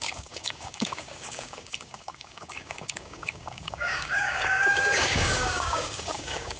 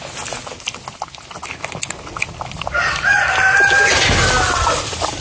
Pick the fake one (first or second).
first